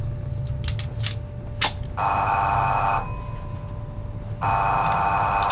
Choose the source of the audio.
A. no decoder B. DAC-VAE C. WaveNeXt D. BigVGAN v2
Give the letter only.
A